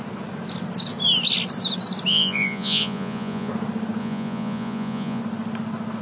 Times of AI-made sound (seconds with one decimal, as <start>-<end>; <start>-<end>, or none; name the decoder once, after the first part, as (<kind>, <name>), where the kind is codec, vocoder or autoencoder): 2.1-3.5 (vocoder, Vocos); 4.0-5.2